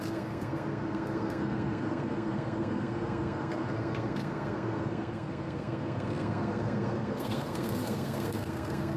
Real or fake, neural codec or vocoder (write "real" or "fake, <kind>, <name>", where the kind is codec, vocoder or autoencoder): fake, codec, SNAC